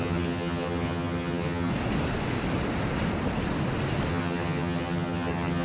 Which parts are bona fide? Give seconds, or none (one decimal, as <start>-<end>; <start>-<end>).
1.7-4.1